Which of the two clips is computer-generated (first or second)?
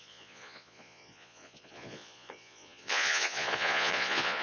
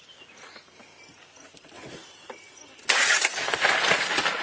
first